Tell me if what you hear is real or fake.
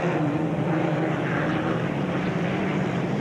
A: fake